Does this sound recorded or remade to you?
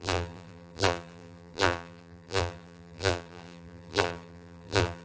remade